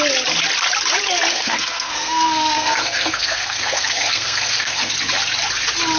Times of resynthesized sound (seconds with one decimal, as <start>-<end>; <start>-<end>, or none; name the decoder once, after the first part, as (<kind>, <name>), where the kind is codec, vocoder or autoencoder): 1.3-4.9 (codec, SNAC)